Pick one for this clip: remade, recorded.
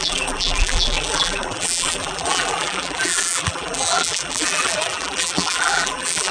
remade